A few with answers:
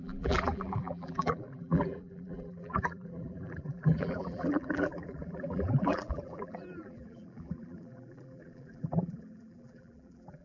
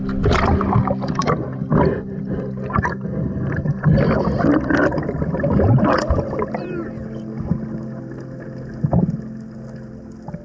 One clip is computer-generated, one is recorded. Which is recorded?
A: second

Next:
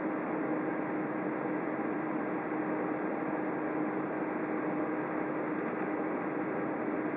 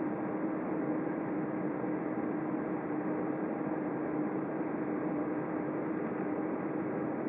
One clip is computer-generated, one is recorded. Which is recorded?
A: first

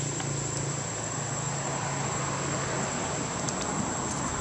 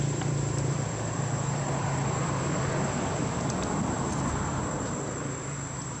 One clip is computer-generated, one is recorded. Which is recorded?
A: first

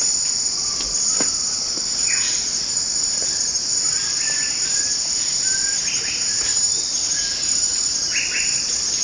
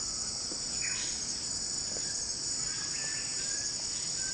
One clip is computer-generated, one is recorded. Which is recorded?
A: second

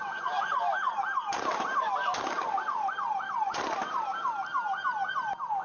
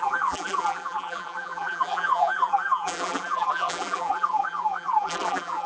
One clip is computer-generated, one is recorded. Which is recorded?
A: first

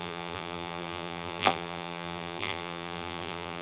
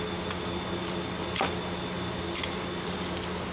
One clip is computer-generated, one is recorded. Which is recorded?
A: second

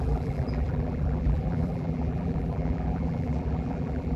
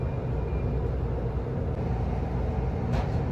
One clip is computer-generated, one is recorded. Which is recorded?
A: second